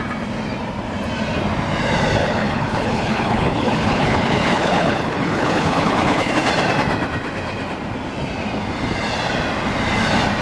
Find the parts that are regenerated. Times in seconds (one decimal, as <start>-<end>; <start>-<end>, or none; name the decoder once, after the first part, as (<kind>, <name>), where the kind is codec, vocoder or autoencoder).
2.2-6.3 (codec, HILCodec)